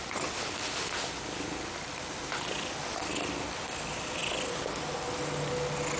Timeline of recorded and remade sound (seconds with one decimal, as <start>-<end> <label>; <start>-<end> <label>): 0.0-6.0 recorded